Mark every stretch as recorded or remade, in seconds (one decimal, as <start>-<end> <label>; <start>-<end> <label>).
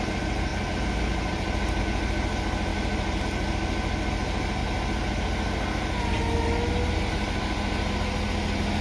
0.0-8.8 recorded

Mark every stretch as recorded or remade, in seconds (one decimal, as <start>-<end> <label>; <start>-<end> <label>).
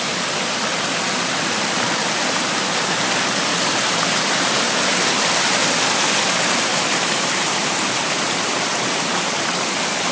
0.0-0.7 recorded; 0.7-3.1 remade; 3.1-3.5 recorded; 3.5-5.3 remade; 5.3-6.7 recorded; 6.7-10.1 remade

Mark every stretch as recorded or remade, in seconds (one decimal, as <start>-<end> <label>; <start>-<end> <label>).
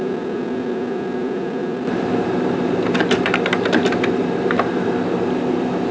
0.0-1.6 recorded; 1.6-5.1 remade; 5.1-5.9 recorded